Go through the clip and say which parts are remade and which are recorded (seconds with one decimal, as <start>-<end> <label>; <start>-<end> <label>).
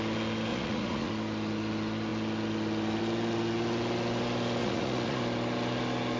0.0-0.5 recorded; 0.5-1.1 remade; 1.1-4.6 recorded; 4.6-5.2 remade; 5.2-6.2 recorded